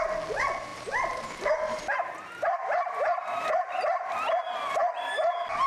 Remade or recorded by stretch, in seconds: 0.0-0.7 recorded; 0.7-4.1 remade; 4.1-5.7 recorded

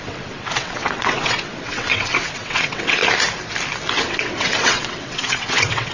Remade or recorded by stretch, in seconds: 0.0-3.0 remade; 3.0-3.9 recorded; 3.9-5.9 remade

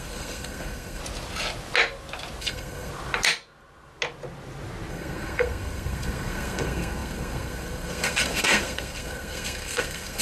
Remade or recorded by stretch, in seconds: 0.0-1.0 remade; 1.0-2.4 recorded; 2.4-2.9 remade; 2.9-4.9 recorded; 4.9-10.2 remade

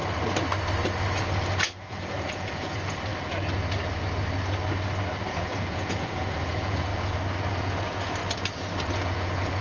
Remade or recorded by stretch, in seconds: 0.0-1.9 recorded; 1.9-3.1 remade; 3.1-5.2 recorded; 5.2-6.9 remade; 6.9-7.5 recorded; 7.5-8.2 remade; 8.2-9.0 recorded; 9.0-9.6 remade

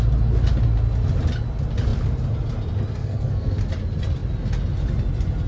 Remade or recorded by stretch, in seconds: 0.0-3.0 recorded; 3.0-3.6 remade; 3.6-5.5 recorded

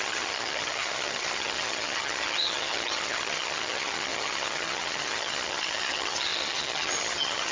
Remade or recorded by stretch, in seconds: 0.0-7.5 remade

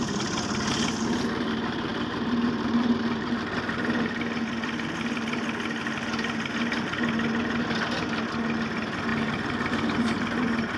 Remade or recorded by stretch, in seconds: 0.0-1.9 recorded; 1.9-3.3 remade; 3.3-10.8 recorded